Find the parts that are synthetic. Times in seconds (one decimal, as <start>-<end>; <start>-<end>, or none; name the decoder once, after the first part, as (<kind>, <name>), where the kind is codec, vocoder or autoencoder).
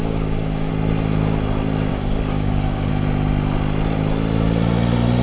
0.0-0.7 (codec, DAC); 1.9-2.9